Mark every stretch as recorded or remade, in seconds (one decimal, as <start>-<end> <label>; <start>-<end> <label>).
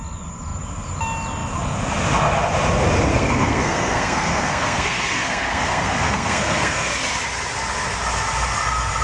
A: 0.0-3.1 recorded; 3.1-6.9 remade; 6.9-9.0 recorded